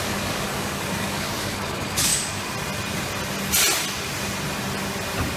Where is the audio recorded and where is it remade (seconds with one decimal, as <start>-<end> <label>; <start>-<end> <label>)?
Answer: 0.0-2.1 remade; 2.1-5.4 recorded